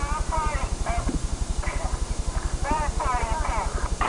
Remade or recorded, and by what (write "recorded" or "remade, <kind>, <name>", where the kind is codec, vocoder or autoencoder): remade, vocoder, BigVGAN v2